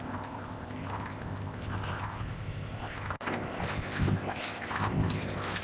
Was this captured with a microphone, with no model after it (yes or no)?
no